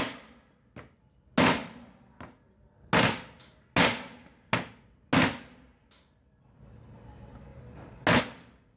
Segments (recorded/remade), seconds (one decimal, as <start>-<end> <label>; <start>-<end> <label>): 0.0-8.8 recorded